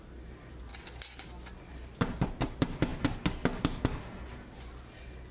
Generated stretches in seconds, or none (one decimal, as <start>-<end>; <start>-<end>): none